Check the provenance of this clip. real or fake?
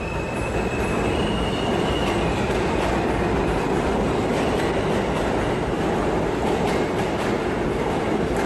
real